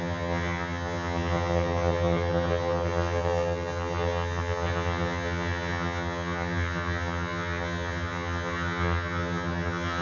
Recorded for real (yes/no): no